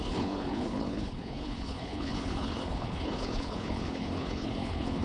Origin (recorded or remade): remade